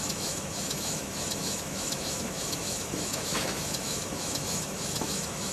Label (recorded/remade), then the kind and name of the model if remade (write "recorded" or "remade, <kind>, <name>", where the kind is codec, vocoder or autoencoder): remade, autoencoder, DAC-VAE